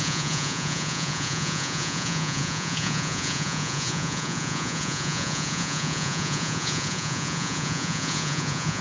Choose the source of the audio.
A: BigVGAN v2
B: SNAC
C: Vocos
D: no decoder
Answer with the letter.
C